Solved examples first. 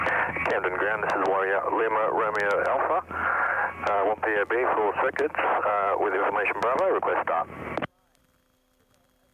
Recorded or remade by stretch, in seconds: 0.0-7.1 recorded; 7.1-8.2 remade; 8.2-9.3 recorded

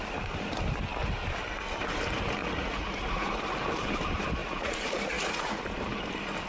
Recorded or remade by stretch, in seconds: 0.0-2.4 recorded; 2.4-3.4 remade; 3.4-4.4 recorded; 4.4-5.6 remade; 5.6-6.5 recorded

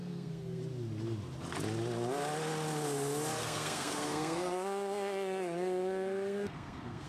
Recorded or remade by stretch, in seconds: 0.0-0.6 remade; 0.6-3.4 recorded; 3.4-7.1 remade

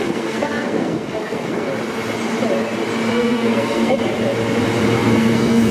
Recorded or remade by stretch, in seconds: 0.0-1.7 remade; 1.7-3.1 recorded; 3.1-4.0 remade; 4.0-5.0 recorded; 5.0-5.7 remade

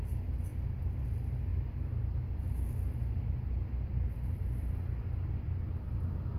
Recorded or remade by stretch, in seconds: 0.0-6.4 recorded

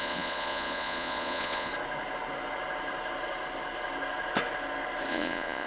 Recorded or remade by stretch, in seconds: 0.0-1.7 remade; 1.7-5.1 recorded; 5.1-5.7 remade

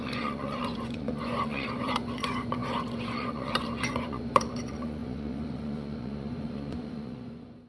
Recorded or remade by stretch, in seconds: 0.0-7.7 remade